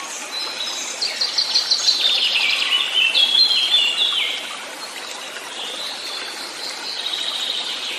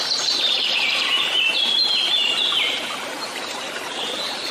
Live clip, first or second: first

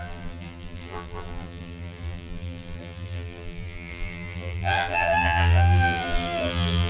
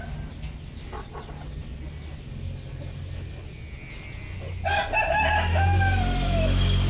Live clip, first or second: second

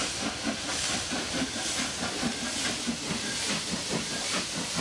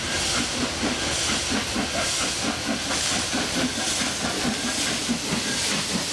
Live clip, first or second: second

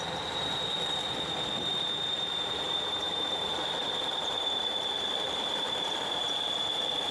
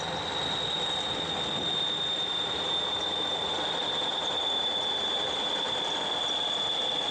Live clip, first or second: second